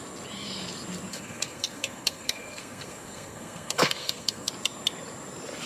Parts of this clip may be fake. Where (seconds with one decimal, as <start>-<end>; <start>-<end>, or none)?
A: 1.1-4.5